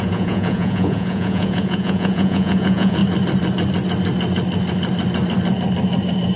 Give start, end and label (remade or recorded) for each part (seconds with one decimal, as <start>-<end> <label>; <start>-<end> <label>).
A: 0.0-3.0 remade; 3.0-6.4 recorded